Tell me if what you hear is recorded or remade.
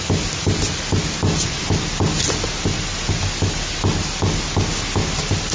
recorded